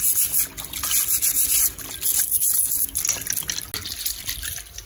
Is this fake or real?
real